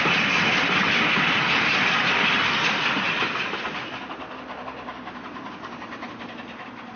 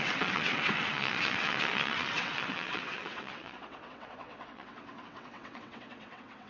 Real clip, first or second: first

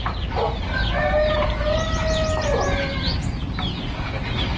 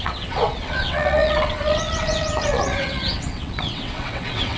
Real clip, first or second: first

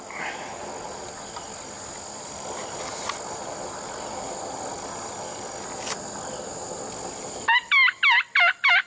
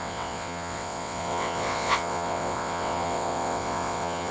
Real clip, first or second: first